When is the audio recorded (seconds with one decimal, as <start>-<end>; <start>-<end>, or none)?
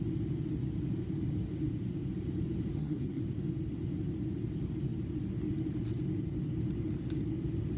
0.0-2.7; 3.2-7.8